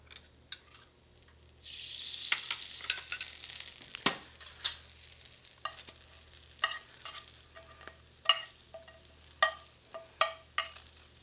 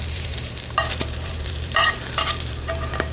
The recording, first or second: first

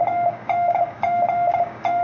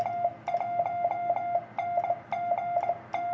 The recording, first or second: second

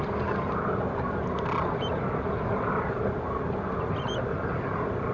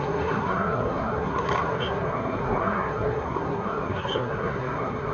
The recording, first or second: first